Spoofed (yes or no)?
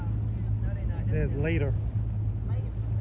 no